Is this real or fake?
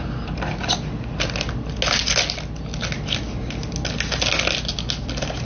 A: real